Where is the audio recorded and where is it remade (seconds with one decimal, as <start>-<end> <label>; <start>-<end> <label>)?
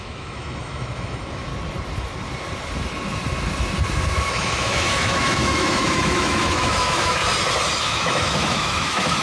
0.0-1.5 remade; 1.5-4.3 recorded; 4.3-7.2 remade; 7.2-7.8 recorded; 7.8-9.2 remade